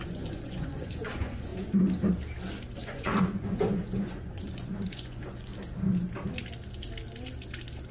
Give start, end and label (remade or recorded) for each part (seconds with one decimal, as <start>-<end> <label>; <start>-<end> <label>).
0.0-1.5 remade; 1.5-2.8 recorded; 2.8-5.5 remade; 5.5-7.9 recorded